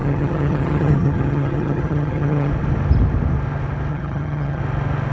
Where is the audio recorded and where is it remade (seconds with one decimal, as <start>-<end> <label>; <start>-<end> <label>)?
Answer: 0.0-2.5 remade; 2.5-3.9 recorded; 3.9-4.6 remade; 4.6-5.1 recorded